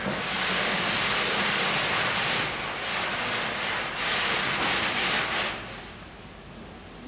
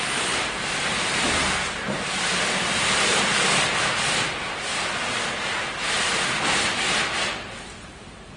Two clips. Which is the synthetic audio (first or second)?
second